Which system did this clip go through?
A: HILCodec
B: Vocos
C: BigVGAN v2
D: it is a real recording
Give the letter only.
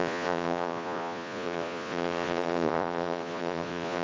B